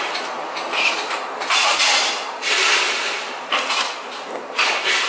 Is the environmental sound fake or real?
fake